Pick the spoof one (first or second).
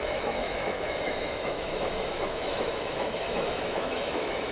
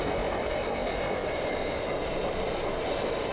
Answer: first